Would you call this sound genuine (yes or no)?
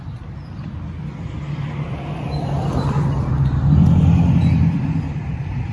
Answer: no